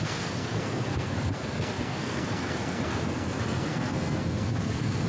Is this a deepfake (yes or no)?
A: yes